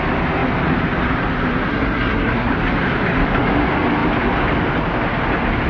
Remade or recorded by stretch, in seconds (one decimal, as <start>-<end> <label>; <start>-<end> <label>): 0.0-1.7 recorded; 1.7-2.5 remade; 2.5-5.7 recorded